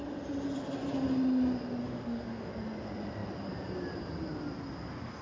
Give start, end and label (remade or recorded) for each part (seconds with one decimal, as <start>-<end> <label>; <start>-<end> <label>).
0.0-1.8 recorded; 1.8-2.5 remade; 2.5-5.2 recorded